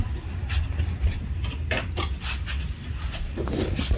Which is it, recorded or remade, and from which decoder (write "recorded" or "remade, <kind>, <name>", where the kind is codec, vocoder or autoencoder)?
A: recorded